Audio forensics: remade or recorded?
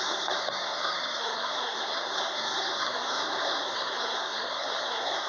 remade